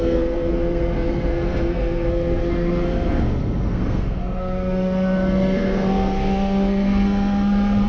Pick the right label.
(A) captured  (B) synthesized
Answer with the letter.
B